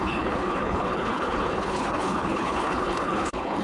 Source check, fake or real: fake